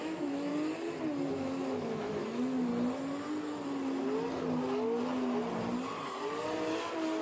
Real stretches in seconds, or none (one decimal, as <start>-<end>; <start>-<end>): 0.5-1.3; 2.7-7.2